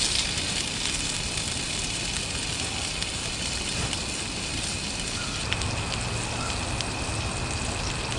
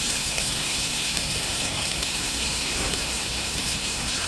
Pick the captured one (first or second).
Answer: first